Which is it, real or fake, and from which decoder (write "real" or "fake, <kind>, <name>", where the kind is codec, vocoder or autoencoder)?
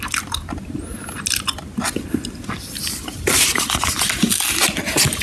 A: real